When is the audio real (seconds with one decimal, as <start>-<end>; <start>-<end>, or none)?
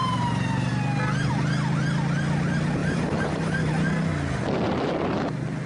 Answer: 0.7-2.8; 3.8-5.7